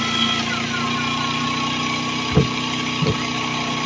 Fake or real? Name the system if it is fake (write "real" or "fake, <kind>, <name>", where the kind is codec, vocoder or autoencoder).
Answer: real